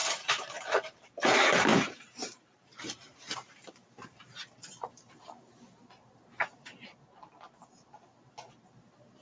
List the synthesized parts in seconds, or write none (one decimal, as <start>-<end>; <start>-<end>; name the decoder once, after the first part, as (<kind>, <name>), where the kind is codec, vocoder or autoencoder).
0.0-0.7 (vocoder, BigVGAN v2); 1.7-5.1; 6.4-6.9

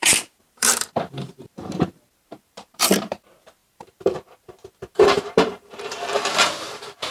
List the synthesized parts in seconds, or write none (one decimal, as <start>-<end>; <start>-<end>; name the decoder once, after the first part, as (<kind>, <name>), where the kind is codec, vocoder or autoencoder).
0.0-7.1 (vocoder, BigVGAN v2)

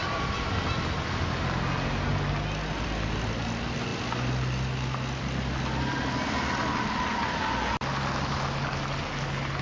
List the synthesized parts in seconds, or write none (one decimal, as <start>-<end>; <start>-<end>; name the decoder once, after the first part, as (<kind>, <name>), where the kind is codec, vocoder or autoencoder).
none

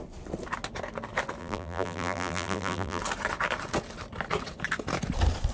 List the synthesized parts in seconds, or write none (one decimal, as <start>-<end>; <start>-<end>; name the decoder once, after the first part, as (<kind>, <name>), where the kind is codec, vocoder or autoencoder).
1.4-3.0 (vocoder, BigVGAN v2)

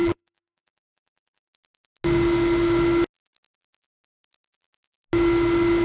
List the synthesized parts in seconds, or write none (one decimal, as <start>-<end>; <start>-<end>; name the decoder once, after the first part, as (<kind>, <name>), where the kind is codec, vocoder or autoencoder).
0.0-1.5 (vocoder, BigVGAN v2)